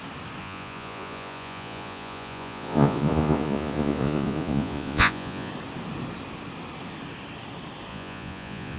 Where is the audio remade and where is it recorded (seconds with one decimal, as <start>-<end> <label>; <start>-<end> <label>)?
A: 0.0-0.4 recorded; 0.4-5.5 remade; 5.5-7.9 recorded; 7.9-8.8 remade